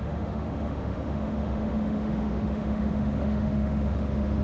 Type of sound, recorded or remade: remade